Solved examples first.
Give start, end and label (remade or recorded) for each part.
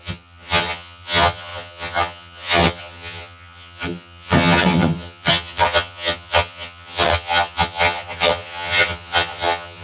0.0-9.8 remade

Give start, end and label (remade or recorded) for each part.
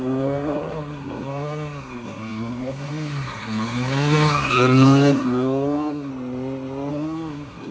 0.0-6.1 remade; 6.1-6.9 recorded; 6.9-7.7 remade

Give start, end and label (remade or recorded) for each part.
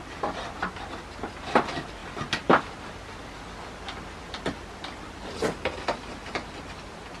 0.0-7.2 recorded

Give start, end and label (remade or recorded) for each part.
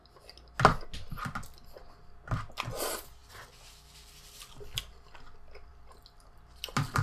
0.0-7.0 recorded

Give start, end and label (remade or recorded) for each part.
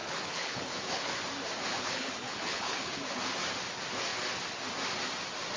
0.0-1.1 remade; 1.1-1.7 recorded; 1.7-3.1 remade; 3.1-5.6 recorded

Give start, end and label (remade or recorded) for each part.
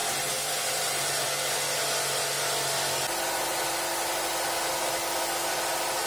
0.0-6.1 recorded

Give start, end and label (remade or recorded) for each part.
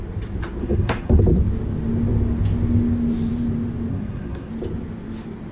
0.0-0.6 recorded; 0.6-1.2 remade; 1.2-3.9 recorded; 3.9-4.5 remade; 4.5-5.5 recorded